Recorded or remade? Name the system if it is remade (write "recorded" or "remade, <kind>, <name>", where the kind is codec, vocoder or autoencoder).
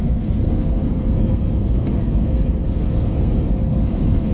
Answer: remade, codec, SNAC